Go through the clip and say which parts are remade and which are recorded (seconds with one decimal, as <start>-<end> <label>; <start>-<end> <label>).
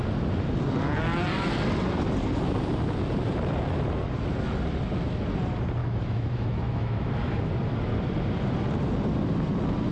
0.0-5.8 recorded; 5.8-7.5 remade; 7.5-9.9 recorded